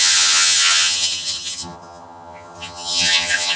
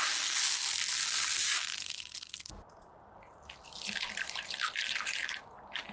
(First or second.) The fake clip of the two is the first